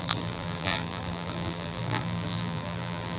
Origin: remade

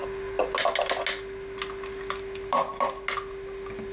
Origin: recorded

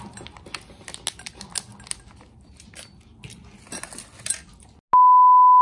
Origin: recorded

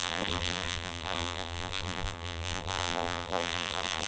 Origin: remade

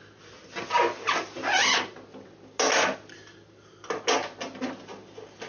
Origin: recorded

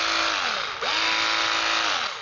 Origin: recorded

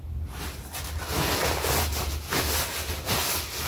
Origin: recorded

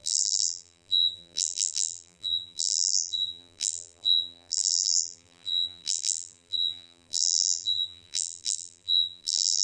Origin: remade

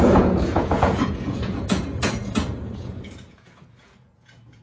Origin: remade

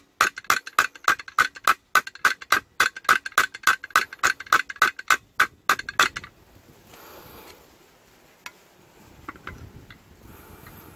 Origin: recorded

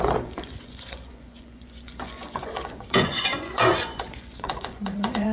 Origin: remade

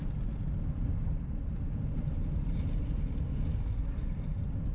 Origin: recorded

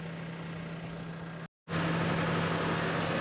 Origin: recorded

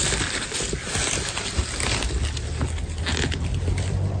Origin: recorded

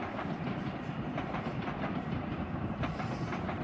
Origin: recorded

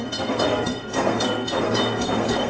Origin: remade